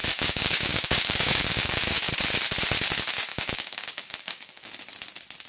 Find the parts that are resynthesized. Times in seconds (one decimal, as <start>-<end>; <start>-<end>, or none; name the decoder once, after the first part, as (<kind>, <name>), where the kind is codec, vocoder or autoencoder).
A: 0.0-2.1 (codec, DAC); 3.3-4.7